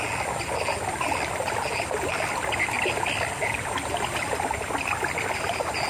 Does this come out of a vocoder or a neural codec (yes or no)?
no